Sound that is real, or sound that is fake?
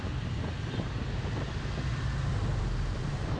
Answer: real